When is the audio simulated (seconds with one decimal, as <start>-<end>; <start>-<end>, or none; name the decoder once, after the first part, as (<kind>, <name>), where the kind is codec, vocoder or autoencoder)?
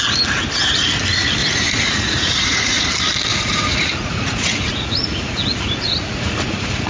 1.4-2.9 (vocoder, Vocos); 3.3-6.9